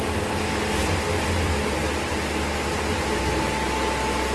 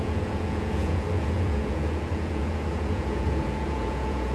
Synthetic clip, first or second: second